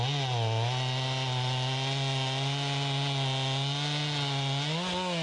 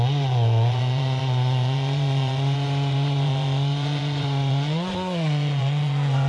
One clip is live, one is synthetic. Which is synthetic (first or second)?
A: second